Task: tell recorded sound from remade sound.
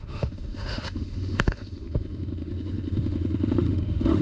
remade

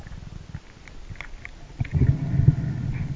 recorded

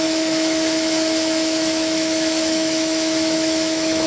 remade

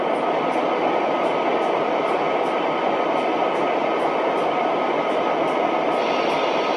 recorded